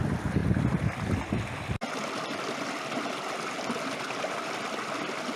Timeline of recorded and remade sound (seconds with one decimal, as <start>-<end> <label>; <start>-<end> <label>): 0.0-5.4 recorded